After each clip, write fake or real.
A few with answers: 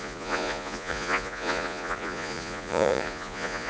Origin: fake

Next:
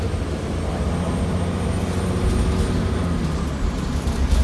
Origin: real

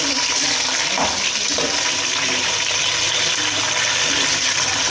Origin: real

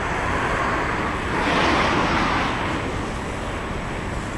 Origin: real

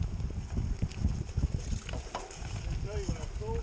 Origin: real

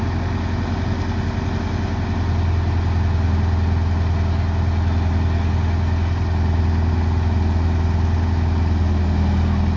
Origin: real